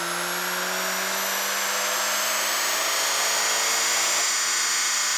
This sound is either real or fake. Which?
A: real